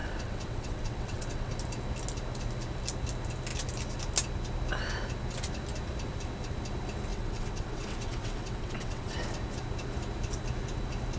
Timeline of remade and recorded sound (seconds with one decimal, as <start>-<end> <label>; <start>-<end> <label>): 0.0-1.5 remade; 1.5-7.1 recorded; 7.1-9.1 remade; 9.1-11.2 recorded

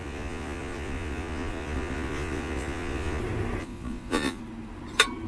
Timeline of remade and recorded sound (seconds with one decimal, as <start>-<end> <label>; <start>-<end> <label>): 0.0-3.2 remade; 3.2-3.6 recorded; 3.6-4.4 remade; 4.4-5.3 recorded

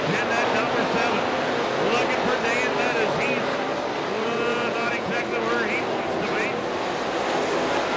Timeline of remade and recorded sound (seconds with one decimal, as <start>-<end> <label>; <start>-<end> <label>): 0.0-4.5 recorded; 4.5-5.2 remade; 5.2-8.0 recorded